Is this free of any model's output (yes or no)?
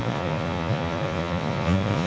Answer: no